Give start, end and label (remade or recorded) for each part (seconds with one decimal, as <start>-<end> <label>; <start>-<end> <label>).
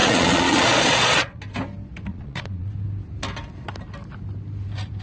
0.0-1.4 remade; 1.4-2.1 recorded; 2.1-2.7 remade; 2.7-5.0 recorded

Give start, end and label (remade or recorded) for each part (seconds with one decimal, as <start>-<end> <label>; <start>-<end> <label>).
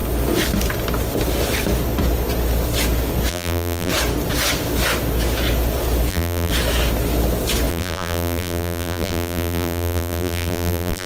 0.0-3.3 recorded; 3.3-3.9 remade; 3.9-6.1 recorded; 6.1-6.5 remade; 6.5-7.7 recorded; 7.7-11.1 remade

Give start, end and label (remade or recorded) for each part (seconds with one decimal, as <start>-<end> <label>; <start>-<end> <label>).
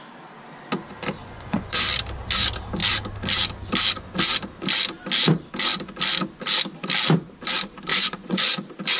0.0-1.2 recorded; 1.2-1.8 remade; 1.8-7.9 recorded; 7.9-8.5 remade; 8.5-9.0 recorded